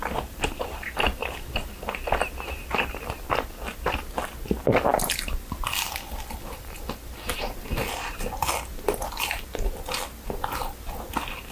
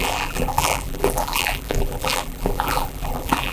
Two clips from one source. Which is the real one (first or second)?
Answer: first